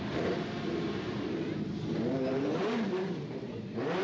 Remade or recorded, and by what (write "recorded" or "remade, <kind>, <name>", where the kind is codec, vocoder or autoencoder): remade, vocoder, BigVGAN v2